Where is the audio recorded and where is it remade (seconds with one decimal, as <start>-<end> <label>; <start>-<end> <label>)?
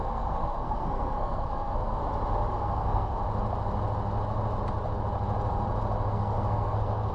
0.0-2.0 remade; 2.0-2.5 recorded; 2.5-3.2 remade; 3.2-6.1 recorded; 6.1-7.1 remade